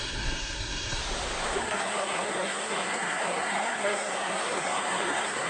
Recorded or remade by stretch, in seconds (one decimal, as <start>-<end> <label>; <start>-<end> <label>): 0.0-1.0 remade; 1.0-1.6 recorded; 1.6-5.5 remade